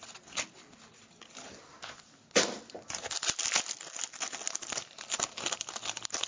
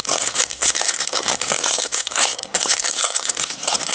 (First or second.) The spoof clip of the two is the second